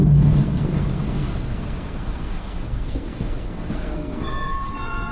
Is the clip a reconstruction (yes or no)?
yes